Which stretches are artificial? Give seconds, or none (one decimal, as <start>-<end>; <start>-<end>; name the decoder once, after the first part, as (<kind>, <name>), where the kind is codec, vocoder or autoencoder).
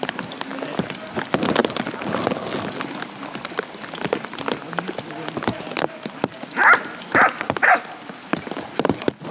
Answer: none